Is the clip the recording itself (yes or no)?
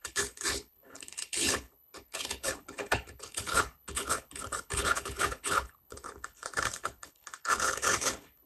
no